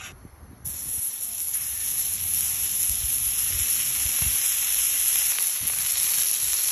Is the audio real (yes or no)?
yes